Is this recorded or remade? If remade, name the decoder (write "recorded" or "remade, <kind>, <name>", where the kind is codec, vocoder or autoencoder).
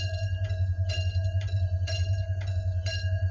remade, vocoder, Vocos